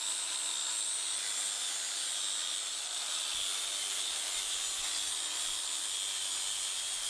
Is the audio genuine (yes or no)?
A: yes